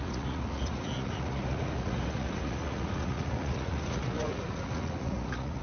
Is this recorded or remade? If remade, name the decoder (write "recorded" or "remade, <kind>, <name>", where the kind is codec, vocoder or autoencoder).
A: remade, vocoder, Vocos